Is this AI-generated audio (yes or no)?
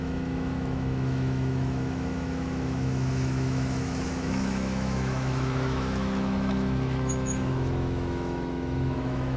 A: yes